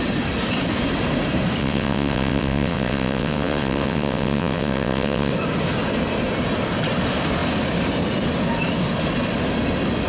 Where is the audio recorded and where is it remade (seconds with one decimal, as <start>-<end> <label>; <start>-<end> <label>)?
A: 0.0-1.6 recorded; 1.6-5.3 remade; 5.3-10.1 recorded